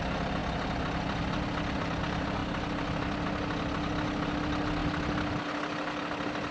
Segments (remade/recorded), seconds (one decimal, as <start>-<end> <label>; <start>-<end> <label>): 0.0-6.5 recorded